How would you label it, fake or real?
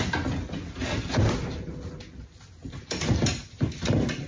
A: real